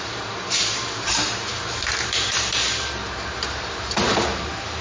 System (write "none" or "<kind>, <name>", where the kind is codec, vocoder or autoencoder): vocoder, BigVGAN v2